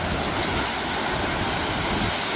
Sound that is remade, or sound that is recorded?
recorded